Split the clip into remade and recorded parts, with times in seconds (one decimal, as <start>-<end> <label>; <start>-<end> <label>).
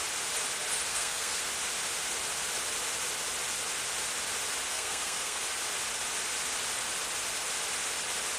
0.0-0.9 recorded; 0.9-1.4 remade; 1.4-4.7 recorded; 4.7-5.4 remade; 5.4-8.4 recorded